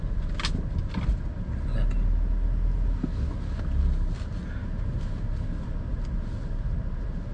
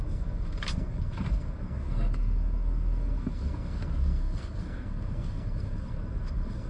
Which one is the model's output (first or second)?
second